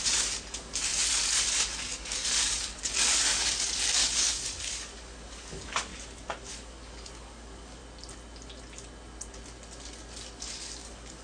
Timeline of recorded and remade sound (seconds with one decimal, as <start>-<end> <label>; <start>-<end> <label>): 0.0-5.9 remade; 5.9-6.5 recorded; 6.5-7.8 remade; 7.8-10.5 recorded; 10.5-11.2 remade